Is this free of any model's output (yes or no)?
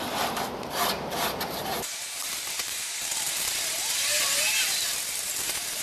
no